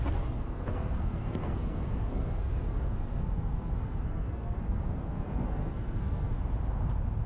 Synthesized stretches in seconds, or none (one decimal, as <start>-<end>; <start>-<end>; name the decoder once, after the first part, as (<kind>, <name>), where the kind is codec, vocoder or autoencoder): 0.0-6.3 (codec, SNAC)